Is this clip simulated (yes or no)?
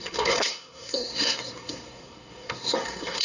yes